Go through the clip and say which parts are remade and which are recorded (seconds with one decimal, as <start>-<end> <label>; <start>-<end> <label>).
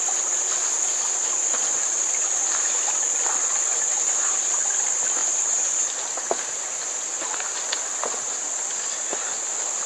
0.0-2.4 recorded; 2.4-4.4 remade; 4.4-9.9 recorded